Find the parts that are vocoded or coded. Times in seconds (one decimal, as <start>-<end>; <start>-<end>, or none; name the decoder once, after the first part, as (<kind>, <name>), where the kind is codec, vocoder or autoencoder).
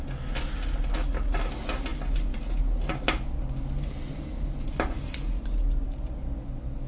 none